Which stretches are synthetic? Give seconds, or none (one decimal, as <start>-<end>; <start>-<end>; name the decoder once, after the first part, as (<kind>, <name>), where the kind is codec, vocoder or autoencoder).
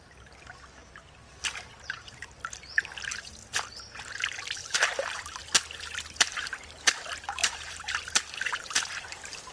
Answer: 0.8-2.4 (vocoder, BigVGAN v2); 4.6-5.4; 7.4-9.5